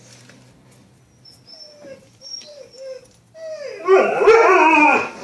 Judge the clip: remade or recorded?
recorded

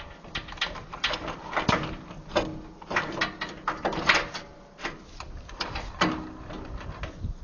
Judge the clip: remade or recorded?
recorded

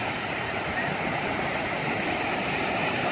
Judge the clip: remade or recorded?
remade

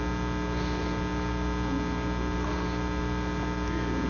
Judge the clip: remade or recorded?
recorded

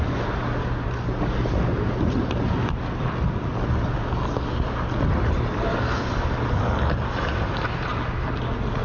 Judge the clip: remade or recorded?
recorded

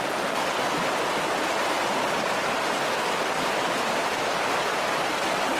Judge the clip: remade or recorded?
recorded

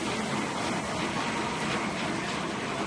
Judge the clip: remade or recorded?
recorded